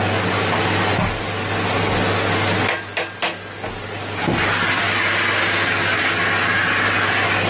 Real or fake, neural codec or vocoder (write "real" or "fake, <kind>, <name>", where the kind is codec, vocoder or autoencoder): real